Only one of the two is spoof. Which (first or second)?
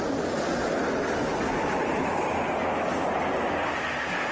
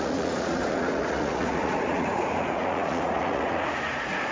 second